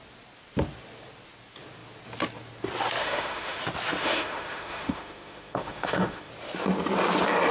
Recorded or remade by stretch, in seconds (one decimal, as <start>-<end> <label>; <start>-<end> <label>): 0.0-3.0 recorded; 3.0-3.6 remade; 3.6-4.0 recorded; 4.0-6.3 remade; 6.3-7.5 recorded